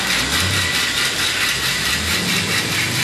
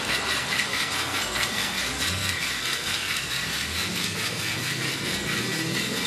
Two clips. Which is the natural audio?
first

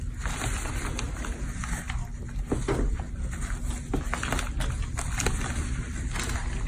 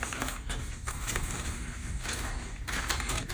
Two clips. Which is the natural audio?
first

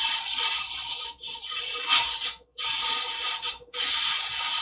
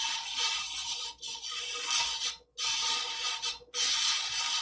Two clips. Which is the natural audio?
second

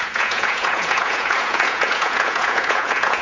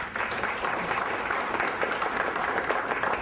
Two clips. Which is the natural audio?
second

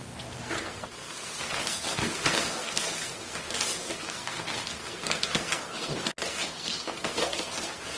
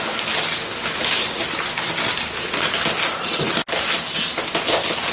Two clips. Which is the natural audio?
second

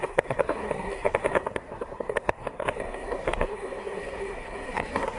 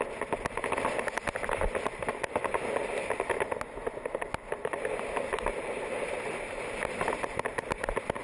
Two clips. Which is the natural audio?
second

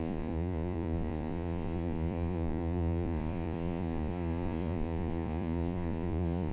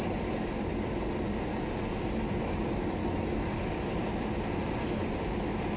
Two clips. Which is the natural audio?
second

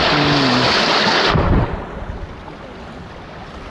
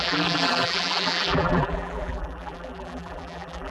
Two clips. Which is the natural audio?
first